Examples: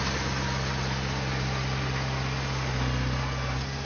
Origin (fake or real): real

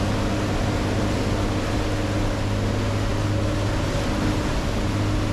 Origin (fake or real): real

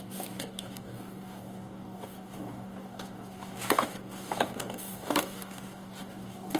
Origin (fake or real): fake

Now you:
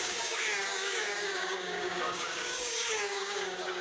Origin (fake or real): fake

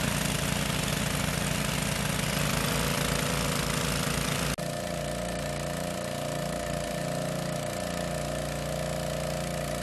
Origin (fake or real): real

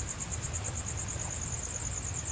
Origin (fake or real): real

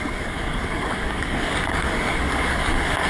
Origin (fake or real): fake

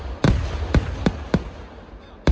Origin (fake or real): real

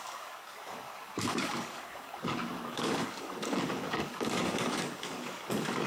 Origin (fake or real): fake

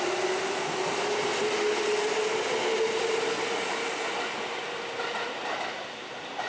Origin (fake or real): real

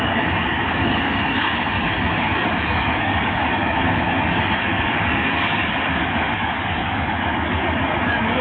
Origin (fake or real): fake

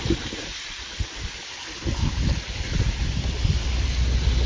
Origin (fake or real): real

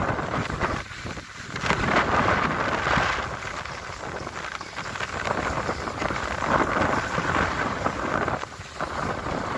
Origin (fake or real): real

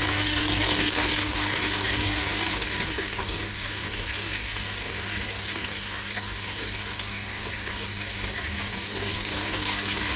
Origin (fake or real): fake